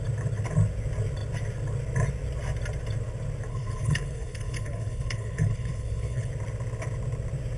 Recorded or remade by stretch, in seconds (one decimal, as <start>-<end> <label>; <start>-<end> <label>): 0.0-3.5 recorded; 3.5-6.3 remade; 6.3-7.6 recorded